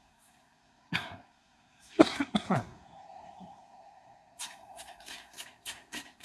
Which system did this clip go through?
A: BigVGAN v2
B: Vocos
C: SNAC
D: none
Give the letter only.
C